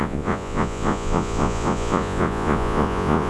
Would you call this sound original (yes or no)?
no